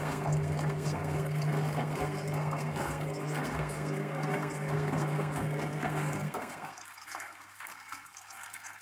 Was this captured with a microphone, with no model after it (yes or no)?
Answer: no